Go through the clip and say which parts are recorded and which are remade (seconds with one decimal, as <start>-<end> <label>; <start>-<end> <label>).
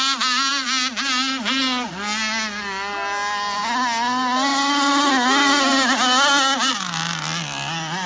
0.0-4.5 recorded; 4.5-5.1 remade; 5.1-8.1 recorded